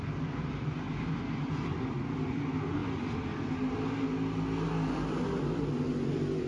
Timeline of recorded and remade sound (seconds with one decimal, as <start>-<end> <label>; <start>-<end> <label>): 0.0-2.8 remade; 2.8-5.4 recorded; 5.4-6.5 remade